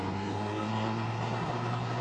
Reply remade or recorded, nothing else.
remade